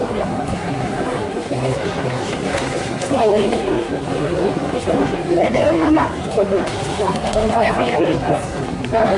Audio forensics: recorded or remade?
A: remade